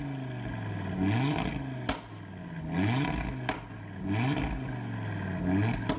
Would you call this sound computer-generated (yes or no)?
no